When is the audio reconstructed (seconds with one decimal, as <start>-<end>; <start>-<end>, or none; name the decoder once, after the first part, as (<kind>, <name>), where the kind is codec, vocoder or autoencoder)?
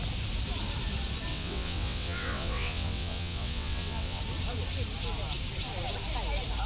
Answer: 1.3-4.2 (vocoder, WaveNeXt)